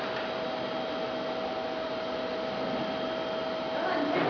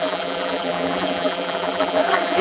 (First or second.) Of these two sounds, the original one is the first